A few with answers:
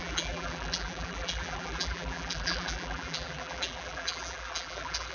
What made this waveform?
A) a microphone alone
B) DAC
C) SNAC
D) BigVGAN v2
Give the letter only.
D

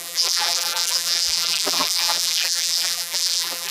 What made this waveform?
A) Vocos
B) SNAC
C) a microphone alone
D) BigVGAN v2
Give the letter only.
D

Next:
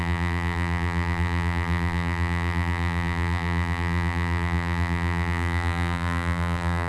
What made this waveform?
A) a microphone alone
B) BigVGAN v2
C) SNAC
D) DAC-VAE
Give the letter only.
B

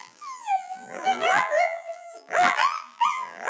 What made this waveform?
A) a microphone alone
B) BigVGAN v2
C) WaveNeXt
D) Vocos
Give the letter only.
B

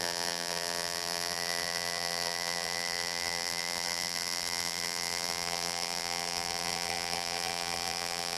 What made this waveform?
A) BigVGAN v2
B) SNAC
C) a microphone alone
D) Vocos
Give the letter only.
A